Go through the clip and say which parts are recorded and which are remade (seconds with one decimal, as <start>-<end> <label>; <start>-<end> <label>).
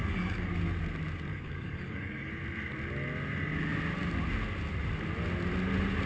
0.0-0.5 remade; 0.5-1.3 recorded; 1.3-2.3 remade; 2.3-6.1 recorded